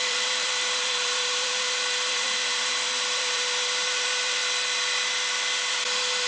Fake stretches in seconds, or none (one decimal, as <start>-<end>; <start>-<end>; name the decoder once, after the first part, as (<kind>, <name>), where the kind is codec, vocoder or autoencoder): 0.0-4.4 (vocoder, BigVGAN v2); 5.7-6.3